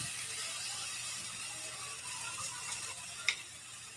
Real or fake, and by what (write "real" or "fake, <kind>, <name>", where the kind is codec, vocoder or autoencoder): real